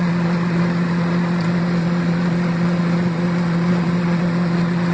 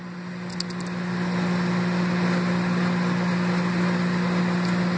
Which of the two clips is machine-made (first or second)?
first